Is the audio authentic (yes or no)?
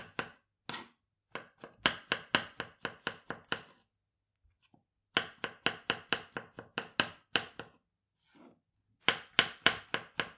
yes